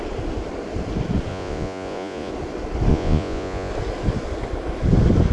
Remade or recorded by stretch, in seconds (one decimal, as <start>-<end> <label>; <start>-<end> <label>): 0.0-1.3 recorded; 1.3-2.3 remade; 2.3-2.9 recorded; 2.9-3.7 remade; 3.7-5.3 recorded